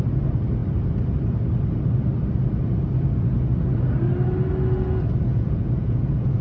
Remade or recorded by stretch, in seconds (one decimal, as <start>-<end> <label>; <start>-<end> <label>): 0.0-5.3 recorded; 5.3-6.4 remade